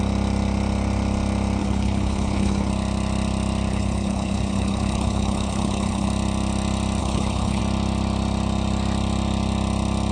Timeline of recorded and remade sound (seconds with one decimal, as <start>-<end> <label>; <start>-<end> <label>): 0.0-1.6 recorded; 1.6-2.7 remade; 2.7-3.7 recorded; 3.7-6.1 remade; 6.1-7.0 recorded; 7.0-7.6 remade; 7.6-10.1 recorded